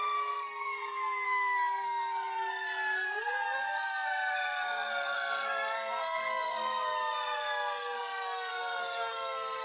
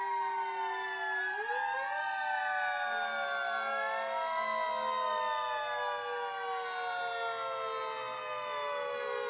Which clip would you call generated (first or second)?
first